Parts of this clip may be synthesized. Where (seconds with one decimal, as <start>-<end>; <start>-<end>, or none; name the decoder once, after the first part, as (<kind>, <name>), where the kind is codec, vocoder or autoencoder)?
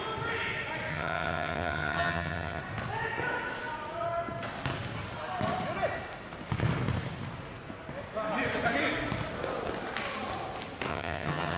0.9-2.6 (vocoder, HiFi-GAN); 10.9-11.6